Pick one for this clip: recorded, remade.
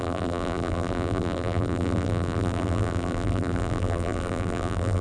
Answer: remade